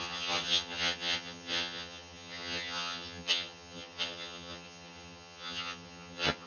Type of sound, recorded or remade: remade